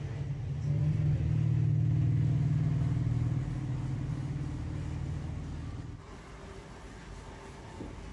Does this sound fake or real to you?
real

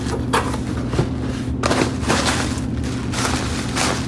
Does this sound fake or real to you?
real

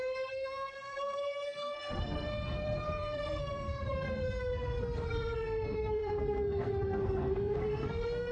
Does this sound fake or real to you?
fake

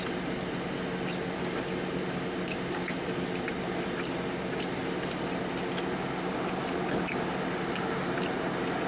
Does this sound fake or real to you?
real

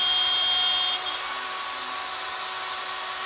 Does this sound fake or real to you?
real